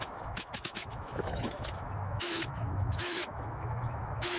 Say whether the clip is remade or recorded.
remade